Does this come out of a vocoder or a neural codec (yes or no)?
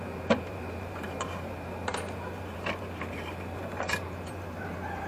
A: yes